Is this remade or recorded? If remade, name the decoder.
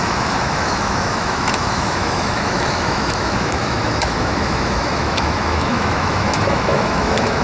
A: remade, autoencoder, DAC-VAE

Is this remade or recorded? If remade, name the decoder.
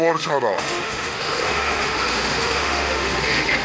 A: remade, autoencoder, DAC-VAE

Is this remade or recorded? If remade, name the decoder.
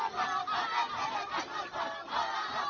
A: recorded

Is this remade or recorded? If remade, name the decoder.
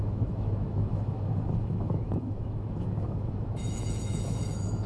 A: remade, autoencoder, DAC-VAE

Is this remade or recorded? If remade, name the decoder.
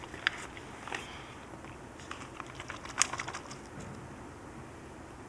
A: recorded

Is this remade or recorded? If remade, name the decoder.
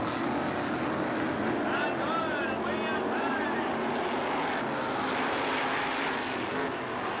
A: recorded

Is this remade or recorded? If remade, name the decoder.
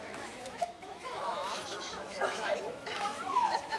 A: remade, autoencoder, DAC-VAE